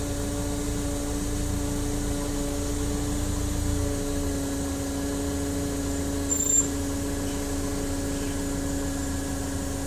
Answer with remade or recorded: recorded